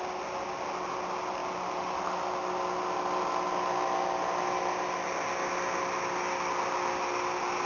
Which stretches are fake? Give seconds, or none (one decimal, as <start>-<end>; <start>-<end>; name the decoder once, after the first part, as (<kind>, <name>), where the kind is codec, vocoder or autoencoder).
none